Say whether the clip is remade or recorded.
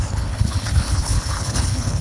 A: remade